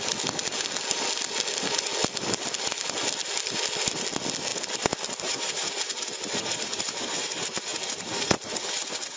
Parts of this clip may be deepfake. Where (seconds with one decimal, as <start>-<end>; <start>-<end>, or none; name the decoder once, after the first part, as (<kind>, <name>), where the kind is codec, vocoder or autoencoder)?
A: 4.5-5.2 (vocoder, BigVGAN v2); 7.7-9.2